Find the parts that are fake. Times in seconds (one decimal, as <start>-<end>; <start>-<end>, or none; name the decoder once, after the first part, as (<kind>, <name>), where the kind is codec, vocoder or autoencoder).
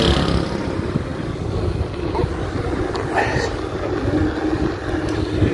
none